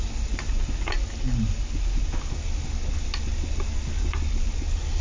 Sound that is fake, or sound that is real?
real